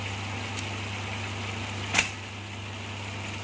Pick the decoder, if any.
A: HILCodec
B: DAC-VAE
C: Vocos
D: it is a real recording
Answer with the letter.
D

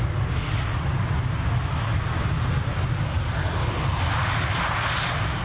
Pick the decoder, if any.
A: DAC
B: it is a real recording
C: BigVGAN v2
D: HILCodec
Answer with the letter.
B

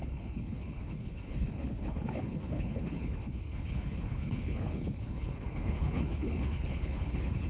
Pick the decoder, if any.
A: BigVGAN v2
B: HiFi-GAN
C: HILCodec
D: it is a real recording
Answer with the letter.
C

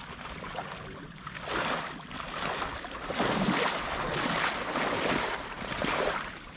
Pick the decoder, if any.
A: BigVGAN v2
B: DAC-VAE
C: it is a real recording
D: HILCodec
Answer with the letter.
C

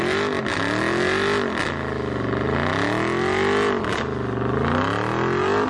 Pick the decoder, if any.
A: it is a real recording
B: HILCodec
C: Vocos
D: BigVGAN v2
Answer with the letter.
A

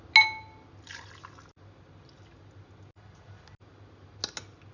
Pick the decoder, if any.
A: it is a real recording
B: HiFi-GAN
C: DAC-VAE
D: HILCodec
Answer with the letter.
A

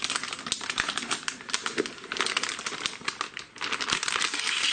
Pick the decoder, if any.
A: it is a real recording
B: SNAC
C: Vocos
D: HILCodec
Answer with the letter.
A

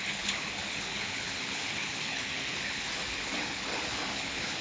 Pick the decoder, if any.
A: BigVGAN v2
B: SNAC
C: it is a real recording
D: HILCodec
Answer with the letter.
D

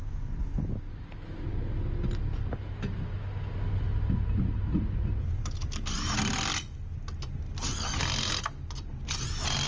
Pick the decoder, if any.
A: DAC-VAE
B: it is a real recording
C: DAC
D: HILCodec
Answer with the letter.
B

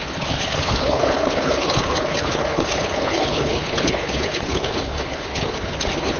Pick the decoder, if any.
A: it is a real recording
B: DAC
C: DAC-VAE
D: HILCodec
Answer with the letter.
D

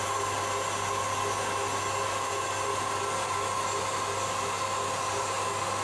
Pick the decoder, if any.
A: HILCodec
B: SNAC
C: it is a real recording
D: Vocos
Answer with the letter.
C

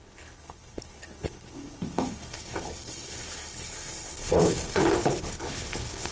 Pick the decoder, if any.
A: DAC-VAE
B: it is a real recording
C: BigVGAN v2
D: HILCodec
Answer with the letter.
D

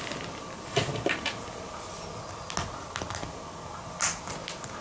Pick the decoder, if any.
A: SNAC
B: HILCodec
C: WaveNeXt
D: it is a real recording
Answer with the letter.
D